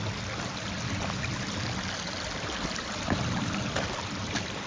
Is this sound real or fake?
real